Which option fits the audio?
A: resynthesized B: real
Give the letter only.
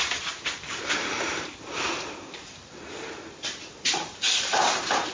A